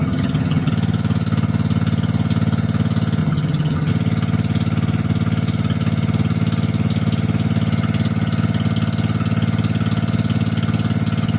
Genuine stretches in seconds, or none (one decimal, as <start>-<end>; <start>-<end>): 0.7-3.2; 3.9-11.4